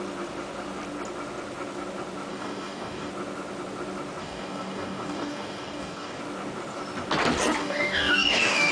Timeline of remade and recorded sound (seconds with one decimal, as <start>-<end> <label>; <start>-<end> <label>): 0.0-2.3 recorded; 2.3-3.1 remade; 3.1-4.2 recorded; 4.2-6.2 remade; 6.2-7.6 recorded; 7.6-8.7 remade